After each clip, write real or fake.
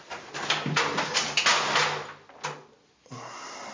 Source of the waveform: real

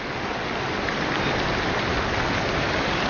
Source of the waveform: real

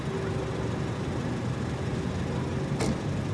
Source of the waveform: real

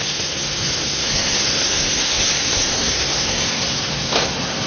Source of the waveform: fake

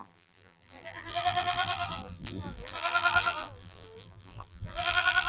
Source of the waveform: fake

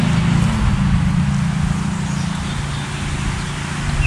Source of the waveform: real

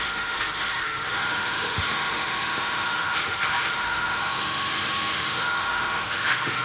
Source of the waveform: fake